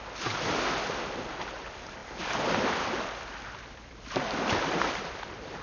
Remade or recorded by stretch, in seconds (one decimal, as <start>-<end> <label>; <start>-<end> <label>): 0.0-5.6 recorded